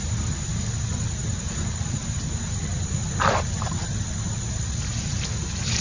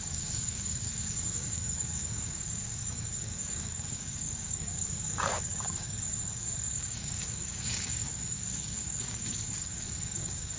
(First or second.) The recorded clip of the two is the first